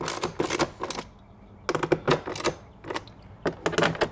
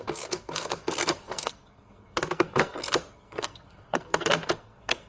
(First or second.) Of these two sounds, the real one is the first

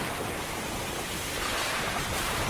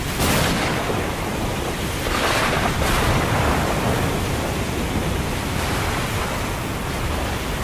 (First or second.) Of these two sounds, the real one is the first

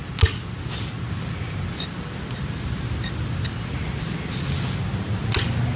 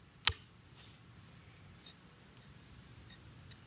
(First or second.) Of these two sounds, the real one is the first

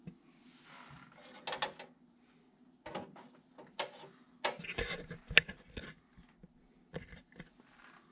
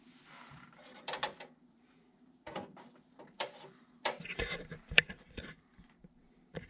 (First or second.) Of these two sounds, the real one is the first